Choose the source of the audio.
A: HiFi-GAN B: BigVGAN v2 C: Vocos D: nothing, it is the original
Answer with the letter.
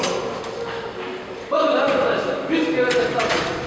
D